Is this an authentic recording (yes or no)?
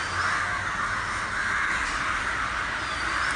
yes